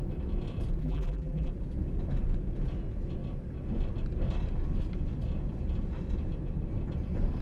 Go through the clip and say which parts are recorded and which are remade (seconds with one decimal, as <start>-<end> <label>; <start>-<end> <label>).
0.0-0.8 recorded; 0.8-1.5 remade; 1.5-7.4 recorded